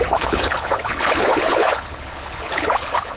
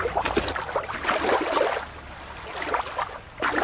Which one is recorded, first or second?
second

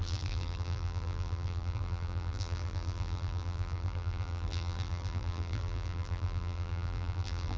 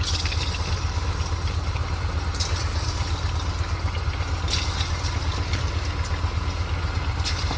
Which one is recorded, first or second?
second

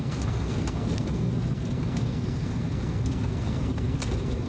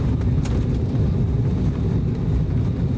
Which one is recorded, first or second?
second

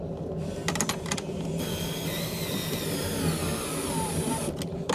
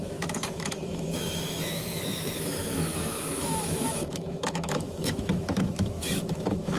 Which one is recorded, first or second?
first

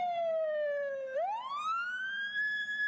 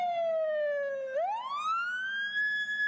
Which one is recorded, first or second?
second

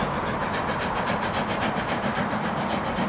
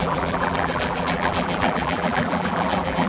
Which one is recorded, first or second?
first